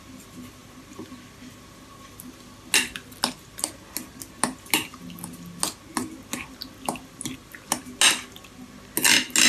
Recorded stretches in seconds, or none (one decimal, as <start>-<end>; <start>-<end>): 0.0-9.5